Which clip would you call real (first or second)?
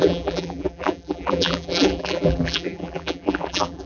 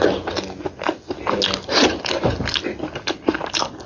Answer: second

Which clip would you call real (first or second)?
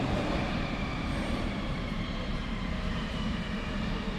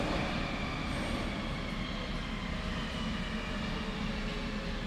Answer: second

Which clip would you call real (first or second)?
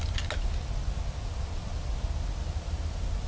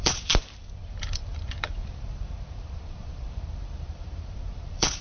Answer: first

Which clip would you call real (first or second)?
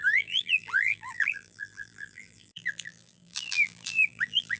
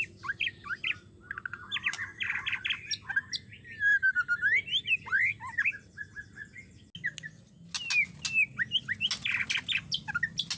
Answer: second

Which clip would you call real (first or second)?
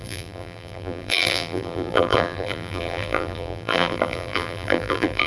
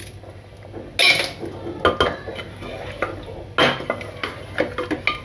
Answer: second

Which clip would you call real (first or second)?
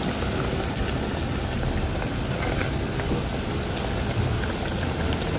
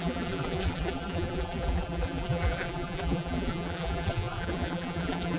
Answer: first